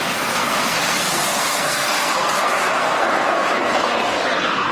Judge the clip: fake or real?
fake